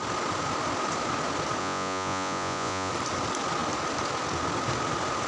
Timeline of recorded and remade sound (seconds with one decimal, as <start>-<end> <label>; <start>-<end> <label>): 0.0-1.6 recorded; 1.6-2.9 remade; 2.9-5.3 recorded